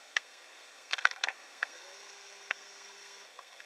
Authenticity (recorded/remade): remade